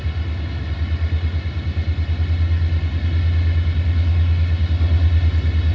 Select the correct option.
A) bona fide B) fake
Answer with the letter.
A